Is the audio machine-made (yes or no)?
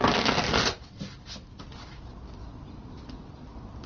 no